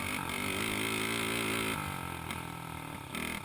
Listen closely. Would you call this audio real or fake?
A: real